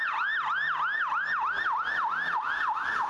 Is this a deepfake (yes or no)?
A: no